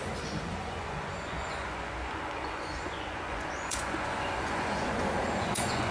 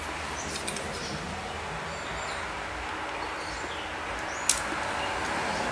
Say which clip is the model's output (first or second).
first